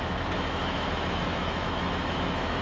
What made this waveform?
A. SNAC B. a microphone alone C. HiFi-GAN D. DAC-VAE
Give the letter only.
D